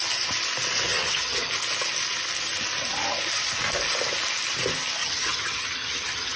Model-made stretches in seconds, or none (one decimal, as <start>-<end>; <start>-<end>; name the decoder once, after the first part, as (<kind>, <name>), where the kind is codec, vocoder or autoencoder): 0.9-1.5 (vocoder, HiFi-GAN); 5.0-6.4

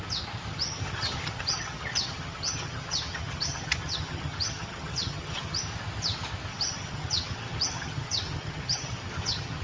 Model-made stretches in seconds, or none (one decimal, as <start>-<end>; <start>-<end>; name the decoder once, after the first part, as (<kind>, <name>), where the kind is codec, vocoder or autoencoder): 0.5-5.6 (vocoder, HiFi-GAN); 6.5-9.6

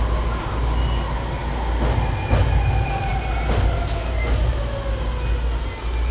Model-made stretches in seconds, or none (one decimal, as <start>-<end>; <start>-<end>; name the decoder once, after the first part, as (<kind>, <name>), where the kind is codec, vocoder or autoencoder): none

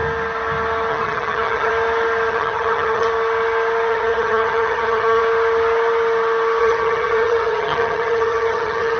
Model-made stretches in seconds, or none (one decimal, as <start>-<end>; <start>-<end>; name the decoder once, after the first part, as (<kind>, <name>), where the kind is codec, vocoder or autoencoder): 0.9-1.7 (vocoder, HiFi-GAN); 2.3-3.1; 3.9-5.2; 6.6-9.0

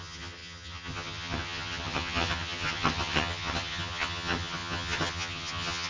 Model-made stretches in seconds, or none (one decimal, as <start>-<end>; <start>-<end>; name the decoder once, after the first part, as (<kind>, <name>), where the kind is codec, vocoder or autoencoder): 0.0-5.9 (vocoder, HiFi-GAN)